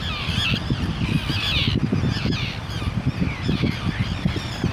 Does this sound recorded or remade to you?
recorded